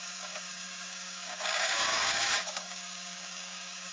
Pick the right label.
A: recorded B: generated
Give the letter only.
B